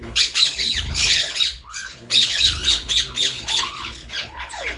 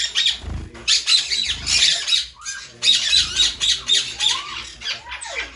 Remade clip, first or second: first